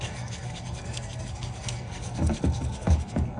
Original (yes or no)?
no